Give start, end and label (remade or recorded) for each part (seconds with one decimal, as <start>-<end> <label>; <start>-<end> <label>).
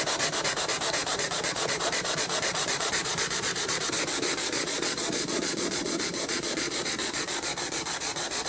0.0-1.0 recorded; 1.0-3.8 remade; 3.8-4.3 recorded; 4.3-8.5 remade